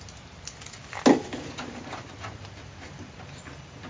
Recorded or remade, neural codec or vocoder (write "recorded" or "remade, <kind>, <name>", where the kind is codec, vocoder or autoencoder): recorded